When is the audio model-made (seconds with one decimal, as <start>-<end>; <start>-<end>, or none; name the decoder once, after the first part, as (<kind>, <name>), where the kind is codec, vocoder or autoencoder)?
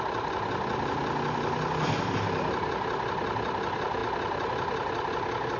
none